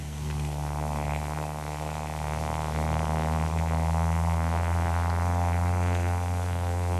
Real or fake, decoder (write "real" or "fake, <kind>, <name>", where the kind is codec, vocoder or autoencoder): fake, codec, SNAC